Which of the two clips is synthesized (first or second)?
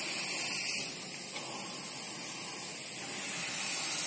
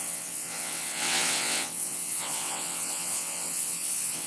second